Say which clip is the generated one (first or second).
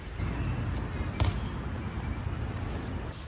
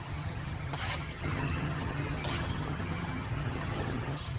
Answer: second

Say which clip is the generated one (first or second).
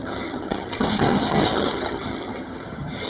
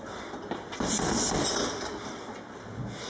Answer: first